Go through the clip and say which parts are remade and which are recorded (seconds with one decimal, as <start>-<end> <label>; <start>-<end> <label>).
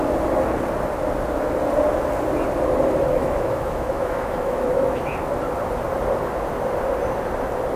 0.0-3.2 recorded; 3.2-5.3 remade; 5.3-7.8 recorded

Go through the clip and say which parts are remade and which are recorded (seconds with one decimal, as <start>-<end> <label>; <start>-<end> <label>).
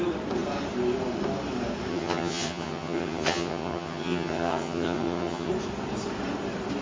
0.0-1.9 recorded; 1.9-5.5 remade; 5.5-6.8 recorded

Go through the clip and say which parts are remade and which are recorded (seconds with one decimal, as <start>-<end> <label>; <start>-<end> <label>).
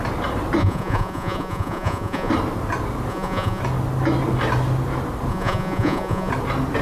0.0-0.6 recorded; 0.6-2.3 remade; 2.3-3.1 recorded; 3.1-3.6 remade; 3.6-5.3 recorded; 5.3-6.3 remade; 6.3-6.8 recorded